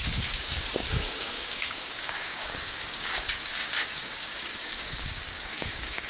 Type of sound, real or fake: fake